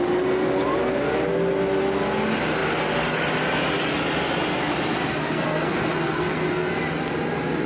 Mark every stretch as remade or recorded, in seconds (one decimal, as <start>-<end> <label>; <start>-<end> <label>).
0.0-5.2 recorded; 5.2-6.7 remade; 6.7-7.7 recorded